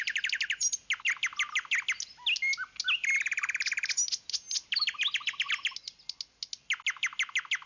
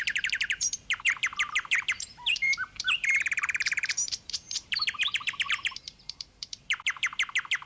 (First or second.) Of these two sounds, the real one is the first